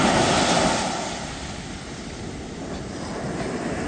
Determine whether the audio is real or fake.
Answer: real